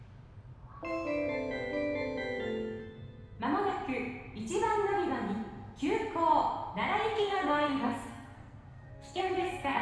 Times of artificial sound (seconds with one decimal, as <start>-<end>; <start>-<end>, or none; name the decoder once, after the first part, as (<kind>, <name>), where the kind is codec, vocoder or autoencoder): 2.8-3.4 (codec, SNAC); 7.1-9.8